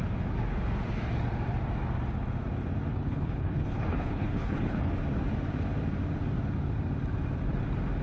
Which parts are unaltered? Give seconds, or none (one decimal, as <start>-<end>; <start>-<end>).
0.0-2.9; 4.9-8.0